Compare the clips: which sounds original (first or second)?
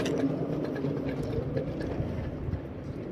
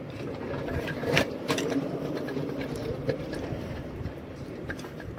first